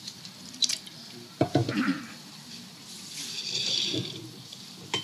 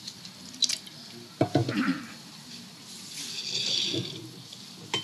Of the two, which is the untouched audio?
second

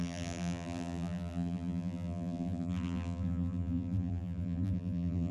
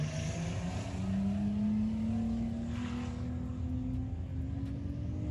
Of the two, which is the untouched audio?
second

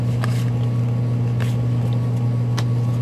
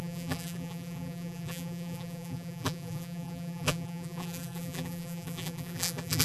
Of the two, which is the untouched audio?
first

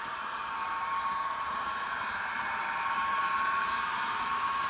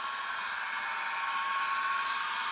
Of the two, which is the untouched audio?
second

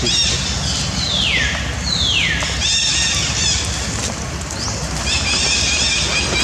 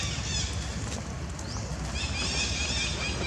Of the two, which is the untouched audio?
second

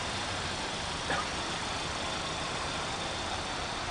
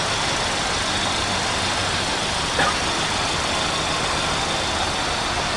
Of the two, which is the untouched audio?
second